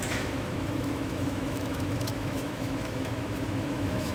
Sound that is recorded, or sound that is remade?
remade